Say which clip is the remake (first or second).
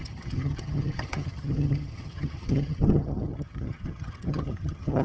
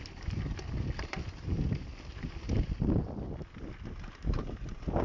first